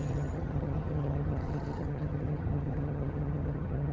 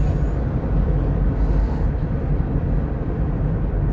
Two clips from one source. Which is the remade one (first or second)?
first